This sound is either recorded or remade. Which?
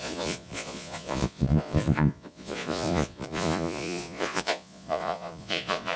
remade